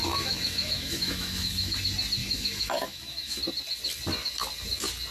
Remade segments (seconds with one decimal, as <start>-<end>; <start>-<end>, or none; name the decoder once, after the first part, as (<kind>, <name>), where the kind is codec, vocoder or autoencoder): 0.0-1.8 (autoencoder, DAC-VAE); 2.2-3.4